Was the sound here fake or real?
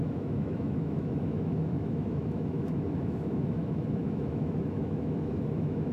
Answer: fake